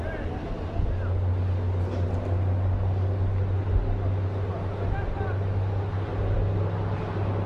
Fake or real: real